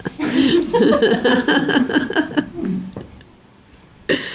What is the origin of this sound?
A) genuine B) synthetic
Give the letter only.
A